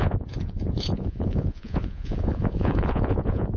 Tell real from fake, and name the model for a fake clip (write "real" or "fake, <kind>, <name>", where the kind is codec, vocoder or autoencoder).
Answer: fake, vocoder, Vocos